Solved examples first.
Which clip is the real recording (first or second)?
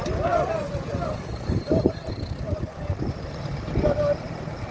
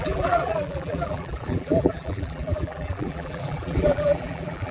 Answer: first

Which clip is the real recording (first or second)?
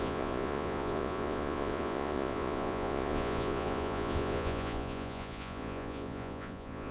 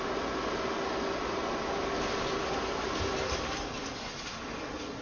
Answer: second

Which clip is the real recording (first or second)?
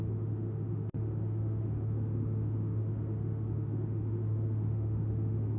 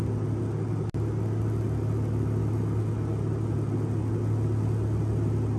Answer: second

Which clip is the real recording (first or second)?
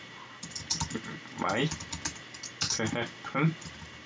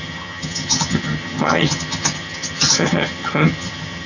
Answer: first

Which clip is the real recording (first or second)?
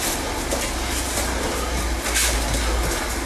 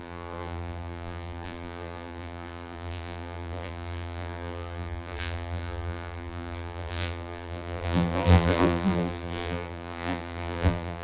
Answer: first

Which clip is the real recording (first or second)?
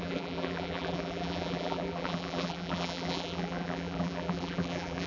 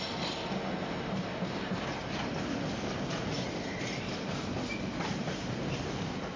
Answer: second